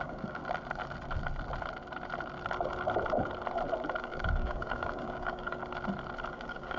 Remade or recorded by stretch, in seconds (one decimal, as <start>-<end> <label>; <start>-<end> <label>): 0.0-0.4 remade; 0.4-4.0 recorded; 4.0-5.6 remade; 5.6-6.3 recorded; 6.3-6.8 remade